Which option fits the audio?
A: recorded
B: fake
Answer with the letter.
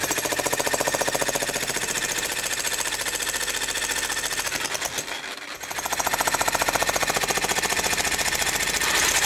A